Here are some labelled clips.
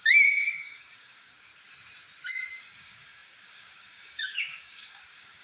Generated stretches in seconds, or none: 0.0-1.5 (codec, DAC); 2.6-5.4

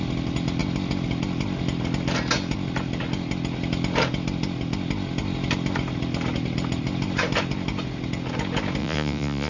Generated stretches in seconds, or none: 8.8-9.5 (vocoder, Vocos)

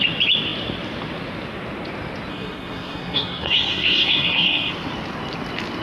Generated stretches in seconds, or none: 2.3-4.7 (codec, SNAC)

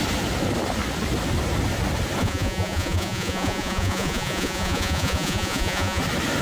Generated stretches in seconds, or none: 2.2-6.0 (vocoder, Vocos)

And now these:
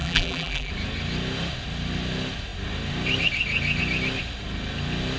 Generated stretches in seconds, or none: 0.0-0.7 (vocoder, BigVGAN v2)

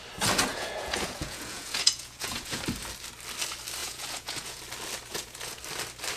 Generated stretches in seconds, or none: 0.5-2.6 (vocoder, Vocos); 3.8-4.6; 5.1-5.6

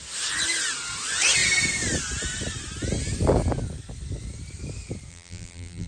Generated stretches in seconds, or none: 5.1-5.9 (vocoder, BigVGAN v2)

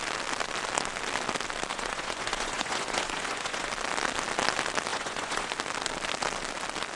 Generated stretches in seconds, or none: 1.7-3.7 (vocoder, Vocos); 4.9-5.5